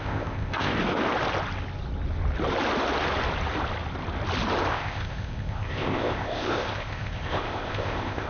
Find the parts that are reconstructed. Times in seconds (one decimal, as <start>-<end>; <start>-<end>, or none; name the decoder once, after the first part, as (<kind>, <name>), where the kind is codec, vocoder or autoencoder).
0.0-0.8 (codec, ZipCodec); 4.7-8.3